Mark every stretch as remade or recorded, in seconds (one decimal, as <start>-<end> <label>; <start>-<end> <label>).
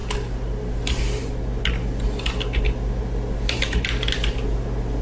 0.0-5.0 recorded